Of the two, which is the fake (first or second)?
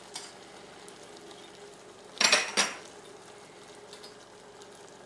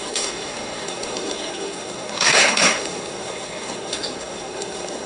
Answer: second